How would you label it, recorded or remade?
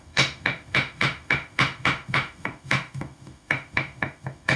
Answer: remade